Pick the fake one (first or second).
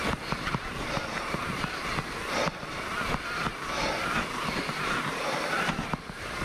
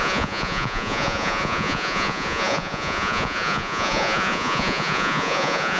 second